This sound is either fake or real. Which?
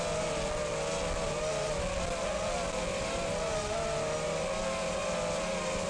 real